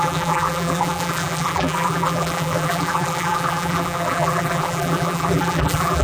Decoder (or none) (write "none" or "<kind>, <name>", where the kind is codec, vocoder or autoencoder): vocoder, BigVGAN v2